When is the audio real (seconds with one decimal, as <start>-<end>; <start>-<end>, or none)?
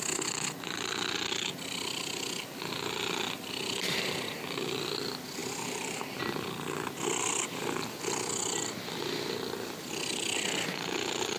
0.0-5.4; 6.2-11.4